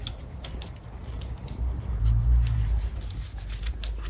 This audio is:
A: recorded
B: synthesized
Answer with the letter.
A